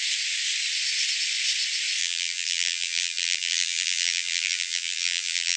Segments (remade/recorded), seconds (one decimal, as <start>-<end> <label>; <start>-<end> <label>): 0.0-2.0 recorded; 2.0-5.6 remade